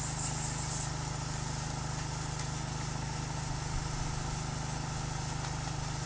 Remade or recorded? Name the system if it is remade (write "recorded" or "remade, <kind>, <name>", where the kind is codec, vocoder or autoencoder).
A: recorded